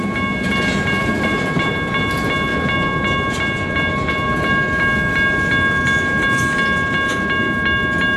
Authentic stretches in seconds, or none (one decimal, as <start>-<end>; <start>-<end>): 0.0-1.0; 1.7-8.2